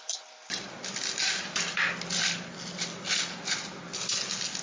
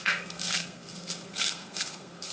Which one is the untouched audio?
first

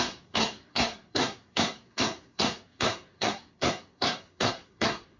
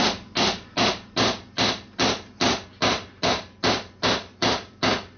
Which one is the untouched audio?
second